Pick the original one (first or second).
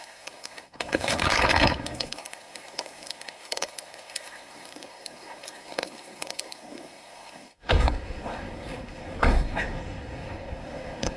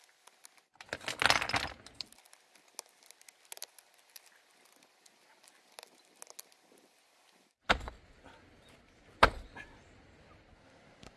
second